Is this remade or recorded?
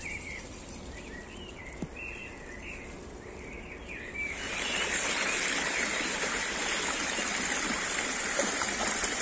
remade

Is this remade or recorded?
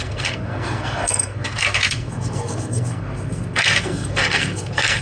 remade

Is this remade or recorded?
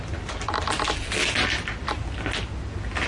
recorded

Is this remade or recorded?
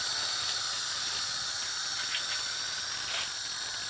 recorded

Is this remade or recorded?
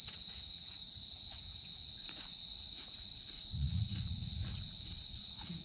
remade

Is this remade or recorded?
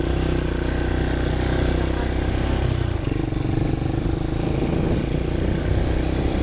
recorded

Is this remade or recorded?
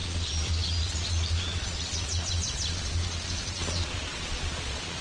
remade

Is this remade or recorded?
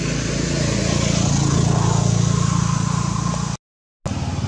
recorded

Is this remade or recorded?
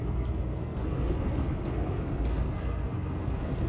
remade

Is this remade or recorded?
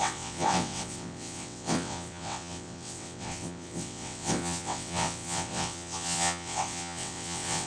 remade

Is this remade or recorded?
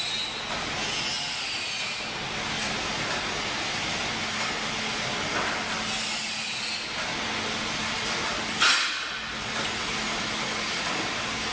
recorded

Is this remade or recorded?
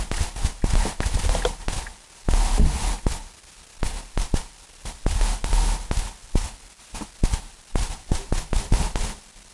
recorded